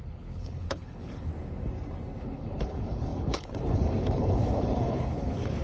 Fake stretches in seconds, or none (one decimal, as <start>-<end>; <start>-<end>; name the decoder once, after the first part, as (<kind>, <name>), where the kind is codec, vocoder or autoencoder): 0.0-1.3 (codec, HILCodec); 2.2-5.6